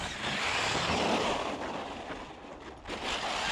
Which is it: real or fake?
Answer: real